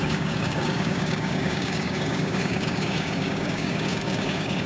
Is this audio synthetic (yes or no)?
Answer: yes